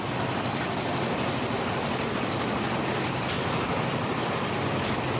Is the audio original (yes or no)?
yes